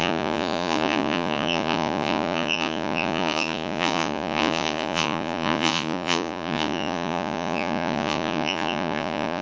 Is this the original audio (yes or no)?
no